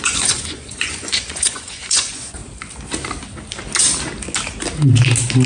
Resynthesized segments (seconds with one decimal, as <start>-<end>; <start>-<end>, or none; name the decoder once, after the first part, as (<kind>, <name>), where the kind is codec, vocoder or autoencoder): 0.0-2.4 (vocoder, Vocos)